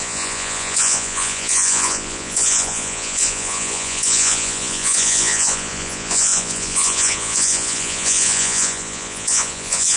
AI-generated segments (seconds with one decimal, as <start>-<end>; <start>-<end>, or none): 0.0-10.0